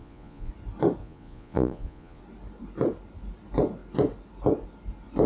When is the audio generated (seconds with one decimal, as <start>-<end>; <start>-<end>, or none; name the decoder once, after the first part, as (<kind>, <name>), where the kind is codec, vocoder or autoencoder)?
0.0-0.5 (vocoder, Vocos); 1.0-2.2